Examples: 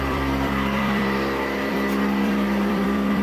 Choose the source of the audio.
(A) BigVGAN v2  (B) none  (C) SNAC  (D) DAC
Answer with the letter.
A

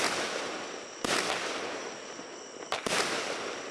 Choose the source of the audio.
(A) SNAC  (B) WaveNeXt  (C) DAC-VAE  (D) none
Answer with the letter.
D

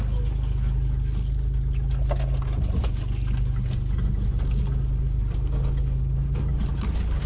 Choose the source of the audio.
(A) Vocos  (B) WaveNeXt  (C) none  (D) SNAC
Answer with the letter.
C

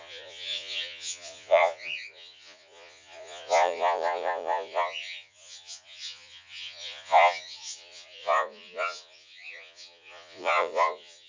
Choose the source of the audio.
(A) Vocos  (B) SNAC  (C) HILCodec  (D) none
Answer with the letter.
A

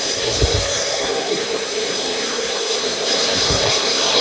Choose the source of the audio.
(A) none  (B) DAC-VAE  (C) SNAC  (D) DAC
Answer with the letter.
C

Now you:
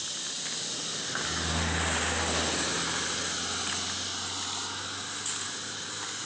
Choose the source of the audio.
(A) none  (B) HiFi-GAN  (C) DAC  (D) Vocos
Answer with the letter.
A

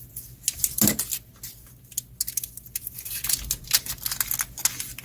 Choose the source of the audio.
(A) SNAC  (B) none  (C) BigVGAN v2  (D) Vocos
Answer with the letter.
B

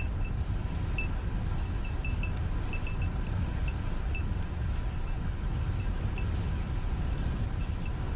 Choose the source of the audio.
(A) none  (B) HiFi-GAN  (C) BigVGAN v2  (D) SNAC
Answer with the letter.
A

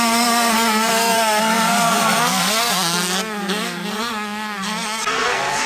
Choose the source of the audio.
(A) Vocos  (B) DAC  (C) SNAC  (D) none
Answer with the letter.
C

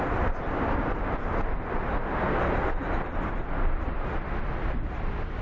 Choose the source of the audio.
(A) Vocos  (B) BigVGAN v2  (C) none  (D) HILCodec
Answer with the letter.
C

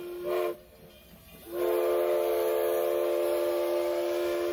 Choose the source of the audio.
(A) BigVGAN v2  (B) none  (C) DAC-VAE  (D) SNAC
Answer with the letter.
B